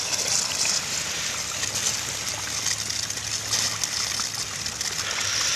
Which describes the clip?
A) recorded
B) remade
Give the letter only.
A